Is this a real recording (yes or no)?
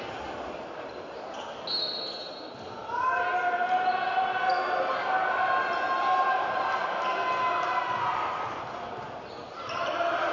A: yes